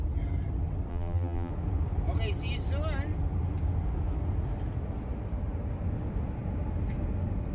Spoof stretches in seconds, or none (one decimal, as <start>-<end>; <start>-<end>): 0.9-1.5